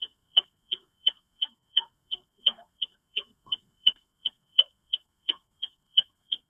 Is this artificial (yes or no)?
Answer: yes